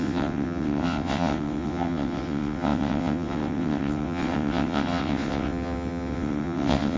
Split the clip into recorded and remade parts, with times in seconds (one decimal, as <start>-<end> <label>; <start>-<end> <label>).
0.0-7.0 remade